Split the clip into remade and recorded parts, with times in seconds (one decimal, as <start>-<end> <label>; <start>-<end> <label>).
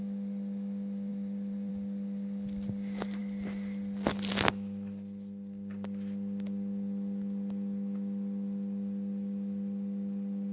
0.0-1.1 recorded; 1.1-1.7 remade; 1.7-10.5 recorded